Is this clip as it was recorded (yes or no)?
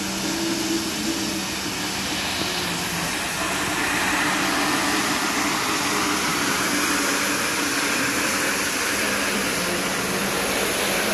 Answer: yes